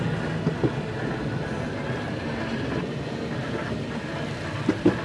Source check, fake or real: real